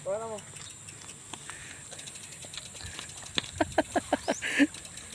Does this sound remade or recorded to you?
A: recorded